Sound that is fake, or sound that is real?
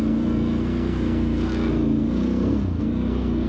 fake